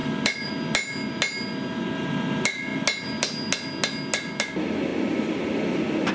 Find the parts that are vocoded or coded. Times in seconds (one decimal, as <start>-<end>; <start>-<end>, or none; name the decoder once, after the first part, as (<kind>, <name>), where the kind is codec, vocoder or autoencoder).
0.0-0.5 (vocoder, BigVGAN v2); 4.9-6.1